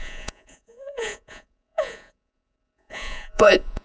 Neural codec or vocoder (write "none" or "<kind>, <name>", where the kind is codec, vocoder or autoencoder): vocoder, Vocos